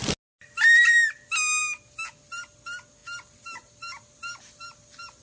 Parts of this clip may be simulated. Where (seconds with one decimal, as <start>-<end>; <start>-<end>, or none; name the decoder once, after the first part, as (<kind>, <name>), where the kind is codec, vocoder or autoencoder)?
none